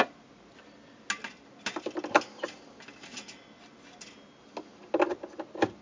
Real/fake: real